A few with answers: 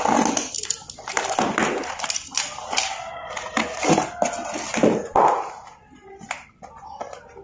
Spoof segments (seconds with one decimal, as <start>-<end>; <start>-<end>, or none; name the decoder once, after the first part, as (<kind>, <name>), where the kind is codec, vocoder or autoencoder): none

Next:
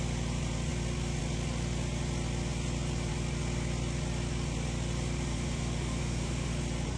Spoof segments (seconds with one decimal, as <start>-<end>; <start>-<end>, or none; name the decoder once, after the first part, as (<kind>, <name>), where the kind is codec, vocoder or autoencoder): 5.3-6.5 (autoencoder, DAC-VAE)

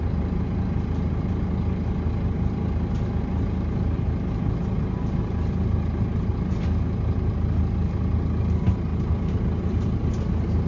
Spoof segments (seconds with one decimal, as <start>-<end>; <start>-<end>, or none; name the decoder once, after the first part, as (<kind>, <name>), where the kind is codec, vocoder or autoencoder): 8.9-10.1 (vocoder, BigVGAN v2)

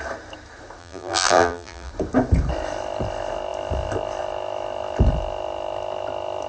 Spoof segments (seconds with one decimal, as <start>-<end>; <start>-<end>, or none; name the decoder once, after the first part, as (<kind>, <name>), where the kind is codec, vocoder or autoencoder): 0.8-1.9 (vocoder, BigVGAN v2)

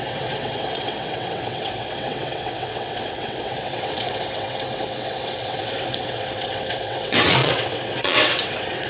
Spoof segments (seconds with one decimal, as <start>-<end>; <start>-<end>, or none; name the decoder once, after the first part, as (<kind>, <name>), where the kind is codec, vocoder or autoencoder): 0.0-8.9 (vocoder, WaveNeXt)

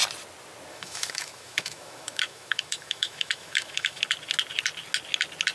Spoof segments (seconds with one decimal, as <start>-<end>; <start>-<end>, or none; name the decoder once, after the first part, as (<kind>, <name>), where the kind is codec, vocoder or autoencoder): 0.7-4.0 (autoencoder, DAC-VAE)

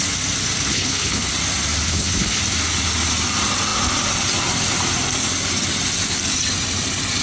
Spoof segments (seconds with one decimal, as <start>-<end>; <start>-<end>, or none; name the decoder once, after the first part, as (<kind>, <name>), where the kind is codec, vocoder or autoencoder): 0.7-1.3 (codec, HILCodec); 1.9-2.4